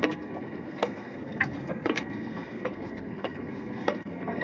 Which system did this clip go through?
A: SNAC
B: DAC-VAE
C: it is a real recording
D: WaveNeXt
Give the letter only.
A